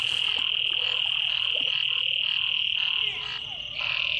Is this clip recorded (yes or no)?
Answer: yes